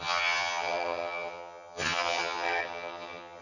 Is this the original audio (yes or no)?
no